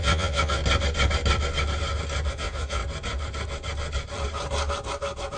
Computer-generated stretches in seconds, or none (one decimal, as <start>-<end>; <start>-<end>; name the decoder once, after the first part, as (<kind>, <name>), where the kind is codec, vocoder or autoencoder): 0.0-0.6 (vocoder, Vocos); 2.3-2.8